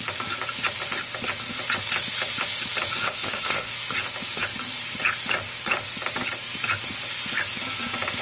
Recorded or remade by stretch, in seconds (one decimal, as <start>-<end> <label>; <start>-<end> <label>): 0.0-2.9 recorded; 2.9-3.7 remade; 3.7-8.2 recorded